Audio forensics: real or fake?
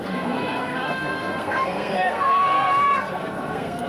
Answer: fake